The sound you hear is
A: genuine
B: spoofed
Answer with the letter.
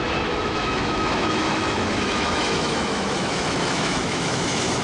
B